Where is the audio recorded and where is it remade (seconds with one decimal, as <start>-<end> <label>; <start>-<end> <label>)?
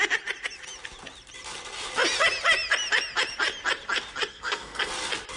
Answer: 0.0-4.3 recorded; 4.3-4.9 remade; 4.9-5.4 recorded